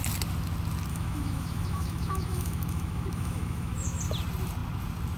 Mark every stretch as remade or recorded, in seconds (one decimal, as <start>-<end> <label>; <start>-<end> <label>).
0.0-0.9 recorded; 0.9-4.0 remade; 4.0-5.2 recorded